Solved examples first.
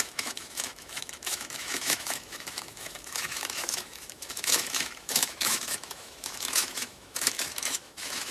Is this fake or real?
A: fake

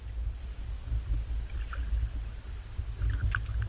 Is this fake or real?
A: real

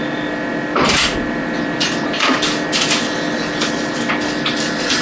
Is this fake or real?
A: real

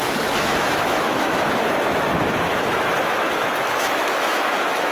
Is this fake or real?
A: fake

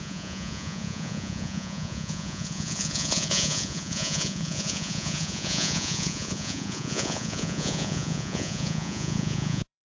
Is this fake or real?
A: fake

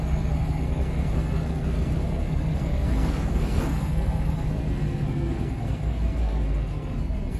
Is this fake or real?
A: fake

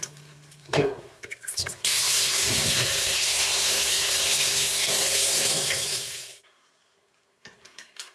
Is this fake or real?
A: fake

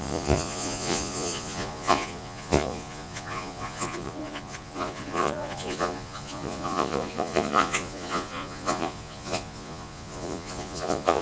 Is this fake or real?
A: fake